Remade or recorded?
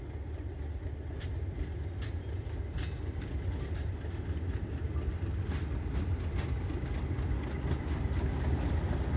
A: recorded